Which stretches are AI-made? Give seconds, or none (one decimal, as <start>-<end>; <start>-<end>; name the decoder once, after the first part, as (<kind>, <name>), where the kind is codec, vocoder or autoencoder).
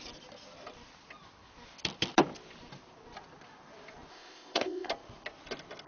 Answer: 4.1-4.9 (codec, ZipCodec)